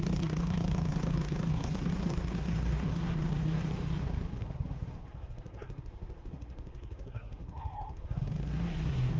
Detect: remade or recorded remade